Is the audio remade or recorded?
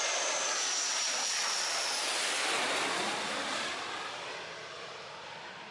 remade